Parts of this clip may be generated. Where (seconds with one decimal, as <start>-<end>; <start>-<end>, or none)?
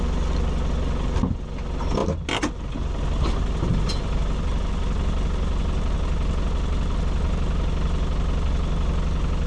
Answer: none